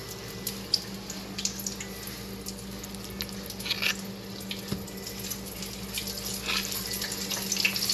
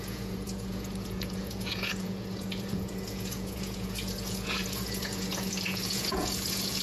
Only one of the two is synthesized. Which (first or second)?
second